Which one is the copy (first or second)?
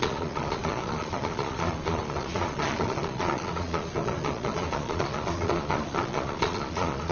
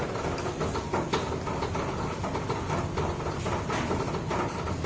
first